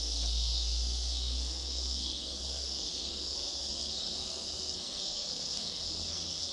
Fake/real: fake